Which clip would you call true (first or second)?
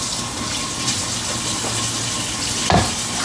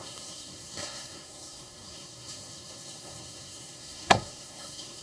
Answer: first